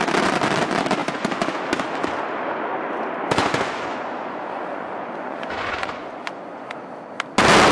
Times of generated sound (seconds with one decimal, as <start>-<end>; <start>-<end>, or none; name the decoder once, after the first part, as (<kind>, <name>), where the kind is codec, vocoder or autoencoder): 1.0-1.6 (vocoder, Vocos); 3.4-6.7